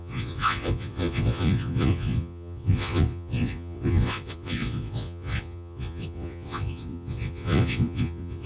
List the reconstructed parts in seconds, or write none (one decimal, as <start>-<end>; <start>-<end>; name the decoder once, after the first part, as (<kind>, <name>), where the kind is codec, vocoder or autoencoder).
0.0-8.5 (vocoder, Vocos)